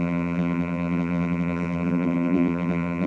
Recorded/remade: remade